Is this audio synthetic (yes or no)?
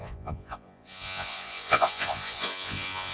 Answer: yes